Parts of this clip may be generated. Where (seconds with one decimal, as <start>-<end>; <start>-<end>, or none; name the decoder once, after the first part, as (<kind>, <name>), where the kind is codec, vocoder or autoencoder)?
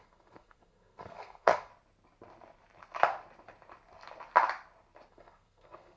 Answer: 0.0-1.7 (codec, SNAC); 5.1-6.0